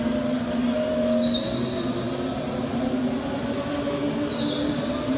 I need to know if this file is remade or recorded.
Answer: recorded